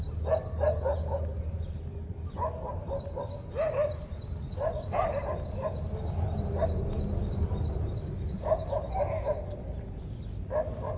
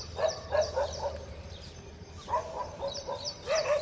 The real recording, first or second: first